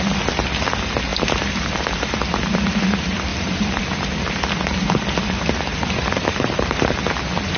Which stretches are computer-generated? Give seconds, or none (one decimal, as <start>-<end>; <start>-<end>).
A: 3.3-3.8; 5.7-6.9